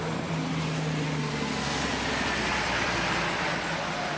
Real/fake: real